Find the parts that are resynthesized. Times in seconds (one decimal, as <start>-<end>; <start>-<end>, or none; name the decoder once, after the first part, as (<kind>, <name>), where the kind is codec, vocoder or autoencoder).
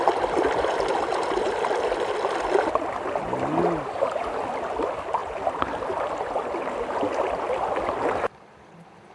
none